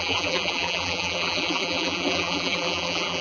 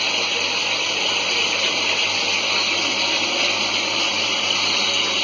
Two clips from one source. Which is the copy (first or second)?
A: first